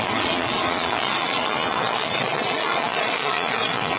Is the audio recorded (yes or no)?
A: no